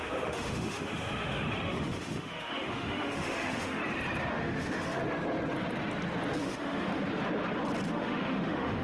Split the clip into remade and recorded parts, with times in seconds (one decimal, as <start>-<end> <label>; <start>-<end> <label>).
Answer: 0.0-3.8 remade; 3.8-4.3 recorded; 4.3-5.0 remade; 5.0-6.4 recorded; 6.4-6.9 remade; 6.9-7.9 recorded; 7.9-8.8 remade